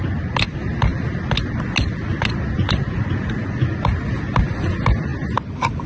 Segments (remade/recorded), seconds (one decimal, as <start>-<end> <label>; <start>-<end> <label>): 0.0-5.9 recorded